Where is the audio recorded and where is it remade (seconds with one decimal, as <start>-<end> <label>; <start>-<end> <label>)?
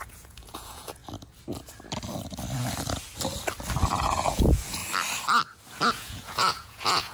0.0-1.0 remade; 1.0-4.0 recorded; 4.0-4.8 remade; 4.8-5.9 recorded; 5.9-7.1 remade